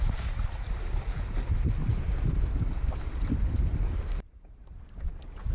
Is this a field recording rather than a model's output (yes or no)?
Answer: yes